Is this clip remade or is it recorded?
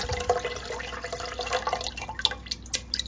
recorded